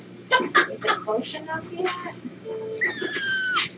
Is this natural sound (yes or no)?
yes